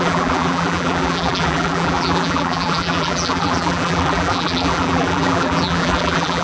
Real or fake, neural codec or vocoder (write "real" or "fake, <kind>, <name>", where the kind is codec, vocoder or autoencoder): fake, vocoder, BigVGAN v2